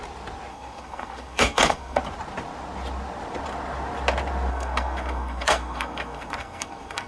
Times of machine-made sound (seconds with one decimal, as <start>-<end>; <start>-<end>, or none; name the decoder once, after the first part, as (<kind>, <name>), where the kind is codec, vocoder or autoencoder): 0.5-2.0 (codec, SNAC); 4.5-7.1